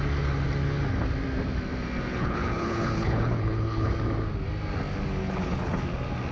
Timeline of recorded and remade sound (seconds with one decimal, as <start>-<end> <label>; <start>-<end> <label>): 0.0-2.1 recorded; 2.1-3.9 remade; 3.9-5.2 recorded; 5.2-5.8 remade; 5.8-6.3 recorded